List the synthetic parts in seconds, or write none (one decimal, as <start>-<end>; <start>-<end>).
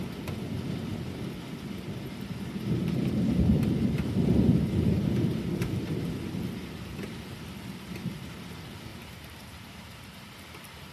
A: 8.9-10.3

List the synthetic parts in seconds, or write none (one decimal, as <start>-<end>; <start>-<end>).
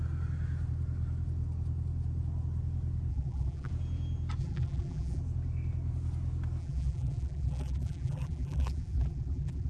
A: 3.1-3.7; 4.4-5.2; 6.6-9.7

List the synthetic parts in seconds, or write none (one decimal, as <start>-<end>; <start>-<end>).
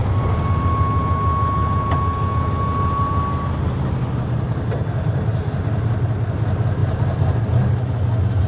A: none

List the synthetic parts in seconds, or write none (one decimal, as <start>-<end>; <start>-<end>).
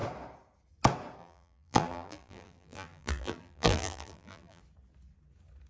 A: 1.2-4.6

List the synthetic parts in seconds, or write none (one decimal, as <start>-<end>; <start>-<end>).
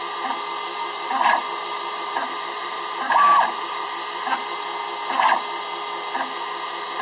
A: 0.7-4.9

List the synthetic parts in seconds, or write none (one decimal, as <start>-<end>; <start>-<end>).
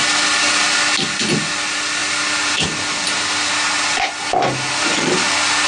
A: none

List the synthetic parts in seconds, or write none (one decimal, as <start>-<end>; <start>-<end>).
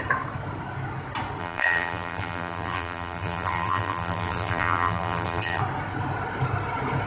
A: 1.4-5.6